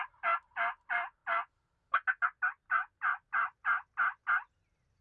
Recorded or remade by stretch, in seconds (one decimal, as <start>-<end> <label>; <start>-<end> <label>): 0.0-5.0 recorded